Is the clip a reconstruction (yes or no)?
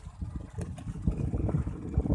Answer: no